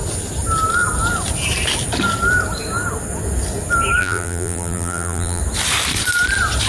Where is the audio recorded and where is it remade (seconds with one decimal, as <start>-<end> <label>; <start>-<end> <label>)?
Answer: 0.0-4.0 recorded; 4.0-5.4 remade; 5.4-6.7 recorded

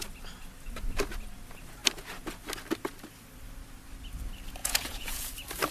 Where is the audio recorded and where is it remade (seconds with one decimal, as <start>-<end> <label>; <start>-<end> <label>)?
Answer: 0.0-4.6 recorded; 4.6-5.3 remade; 5.3-5.7 recorded

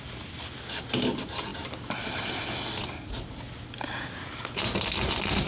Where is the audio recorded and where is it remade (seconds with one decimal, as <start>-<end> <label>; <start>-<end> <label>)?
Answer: 0.0-5.5 recorded

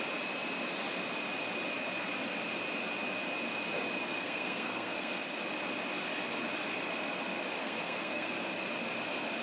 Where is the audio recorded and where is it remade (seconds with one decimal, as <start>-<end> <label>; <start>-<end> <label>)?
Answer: 0.0-4.0 recorded; 4.0-5.1 remade; 5.1-7.6 recorded; 7.6-8.3 remade; 8.3-9.4 recorded

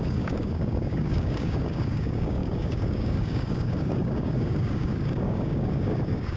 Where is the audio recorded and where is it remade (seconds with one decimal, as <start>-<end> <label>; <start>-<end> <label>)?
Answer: 0.0-6.4 remade

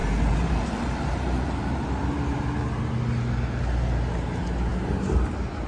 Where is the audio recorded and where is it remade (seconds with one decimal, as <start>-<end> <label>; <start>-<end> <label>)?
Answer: 0.0-2.4 remade; 2.4-5.7 recorded